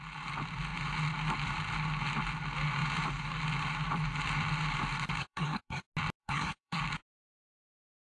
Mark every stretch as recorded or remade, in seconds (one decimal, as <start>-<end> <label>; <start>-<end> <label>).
0.0-5.2 recorded; 5.2-5.8 remade; 5.8-6.2 recorded; 6.2-6.8 remade; 6.8-8.1 recorded